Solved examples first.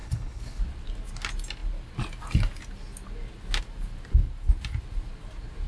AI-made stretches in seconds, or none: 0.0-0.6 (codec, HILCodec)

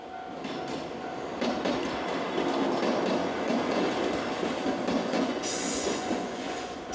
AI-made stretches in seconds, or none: 3.2-4.0 (vocoder, Vocos); 5.0-6.9